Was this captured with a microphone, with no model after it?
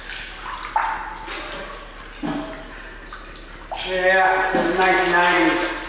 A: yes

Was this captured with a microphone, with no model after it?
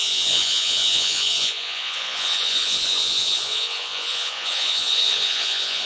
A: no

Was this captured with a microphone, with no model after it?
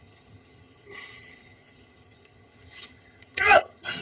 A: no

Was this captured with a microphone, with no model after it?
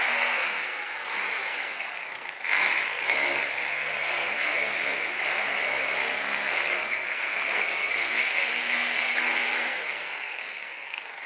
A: no